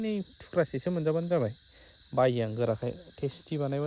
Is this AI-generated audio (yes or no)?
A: no